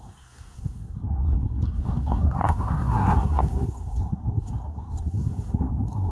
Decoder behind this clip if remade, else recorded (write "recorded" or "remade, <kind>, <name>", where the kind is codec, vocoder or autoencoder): remade, codec, SNAC